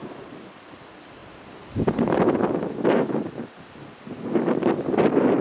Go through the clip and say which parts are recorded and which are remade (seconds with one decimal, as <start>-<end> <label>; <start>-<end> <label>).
0.0-5.4 recorded